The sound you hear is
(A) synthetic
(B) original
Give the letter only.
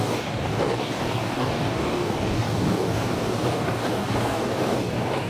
A